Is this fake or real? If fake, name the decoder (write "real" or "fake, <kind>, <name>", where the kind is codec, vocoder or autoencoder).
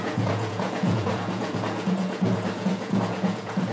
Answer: fake, vocoder, Vocos